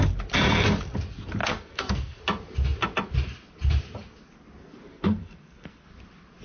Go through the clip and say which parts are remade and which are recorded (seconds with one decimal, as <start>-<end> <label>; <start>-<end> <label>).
0.0-1.4 recorded; 1.4-2.2 remade; 2.2-4.6 recorded; 4.6-5.9 remade; 5.9-6.4 recorded